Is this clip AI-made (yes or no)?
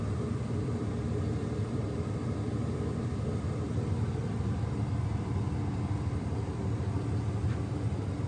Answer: yes